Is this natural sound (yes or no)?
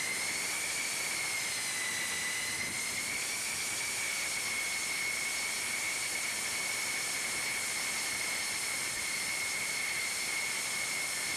yes